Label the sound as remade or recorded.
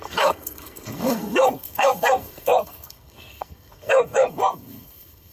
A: remade